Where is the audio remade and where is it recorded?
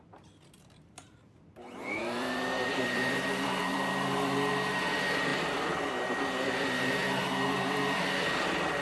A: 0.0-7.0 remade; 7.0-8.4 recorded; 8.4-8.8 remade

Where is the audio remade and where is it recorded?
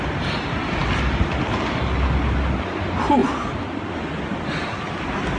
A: 0.0-3.2 recorded; 3.2-3.9 remade; 3.9-5.4 recorded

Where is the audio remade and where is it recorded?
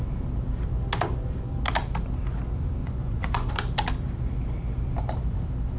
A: 0.0-2.8 recorded; 2.8-3.5 remade; 3.5-5.8 recorded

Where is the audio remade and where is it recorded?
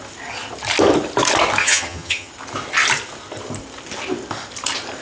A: 0.0-1.6 recorded; 1.6-2.3 remade; 2.3-5.0 recorded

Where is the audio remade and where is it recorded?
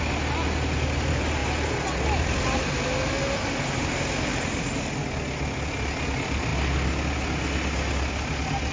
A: 0.0-8.7 recorded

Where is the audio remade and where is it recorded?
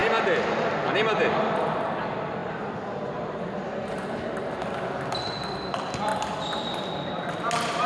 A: 0.0-2.4 recorded; 2.4-4.4 remade; 4.4-7.9 recorded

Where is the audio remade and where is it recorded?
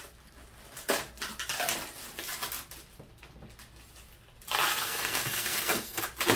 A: 0.0-4.7 recorded; 4.7-6.0 remade; 6.0-6.4 recorded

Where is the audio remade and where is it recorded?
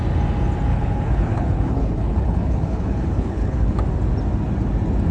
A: 0.0-0.7 recorded; 0.7-3.8 remade; 3.8-5.1 recorded